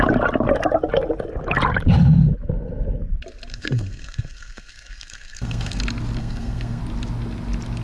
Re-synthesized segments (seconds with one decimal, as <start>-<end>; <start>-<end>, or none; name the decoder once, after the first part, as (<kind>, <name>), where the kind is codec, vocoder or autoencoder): 3.5-5.8 (codec, SNAC); 6.2-6.8

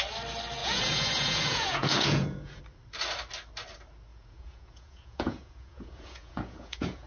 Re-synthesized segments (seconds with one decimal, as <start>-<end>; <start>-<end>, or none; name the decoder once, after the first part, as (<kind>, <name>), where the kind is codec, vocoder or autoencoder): 0.6-2.6 (vocoder, Vocos); 4.1-7.1

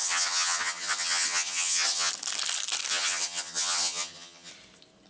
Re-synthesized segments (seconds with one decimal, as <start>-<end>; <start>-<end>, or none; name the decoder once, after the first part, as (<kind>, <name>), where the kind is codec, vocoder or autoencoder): 0.0-2.1 (vocoder, HiFi-GAN); 2.9-4.5

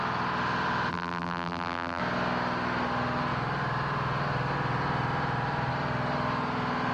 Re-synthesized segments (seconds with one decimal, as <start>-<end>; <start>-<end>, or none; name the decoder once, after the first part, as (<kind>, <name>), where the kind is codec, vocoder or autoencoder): 0.9-2.0 (vocoder, BigVGAN v2)

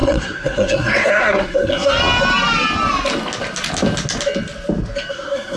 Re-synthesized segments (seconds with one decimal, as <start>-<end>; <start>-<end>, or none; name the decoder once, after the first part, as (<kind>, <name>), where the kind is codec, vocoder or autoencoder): 0.0-1.9 (codec, SNAC); 5.1-5.6

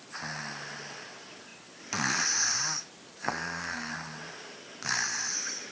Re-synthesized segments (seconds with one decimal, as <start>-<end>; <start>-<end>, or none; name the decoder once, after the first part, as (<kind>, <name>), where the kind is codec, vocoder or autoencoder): 3.2-3.9 (codec, SNAC)